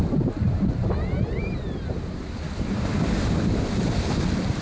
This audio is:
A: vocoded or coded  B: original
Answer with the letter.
B